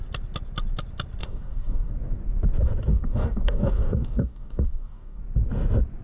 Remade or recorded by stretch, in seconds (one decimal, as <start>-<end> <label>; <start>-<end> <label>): 0.0-1.2 recorded; 1.2-1.9 remade; 1.9-2.9 recorded; 2.9-5.2 remade; 5.2-6.0 recorded